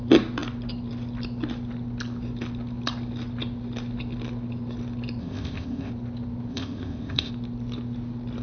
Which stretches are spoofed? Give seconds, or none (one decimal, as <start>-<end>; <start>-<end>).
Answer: 5.2-5.9; 6.5-7.3